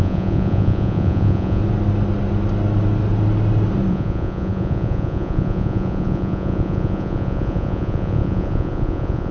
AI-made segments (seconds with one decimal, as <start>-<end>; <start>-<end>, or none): 0.0-1.6; 3.9-9.3